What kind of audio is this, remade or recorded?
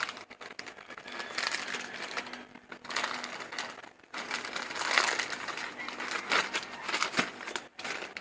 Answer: recorded